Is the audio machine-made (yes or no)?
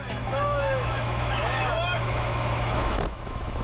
yes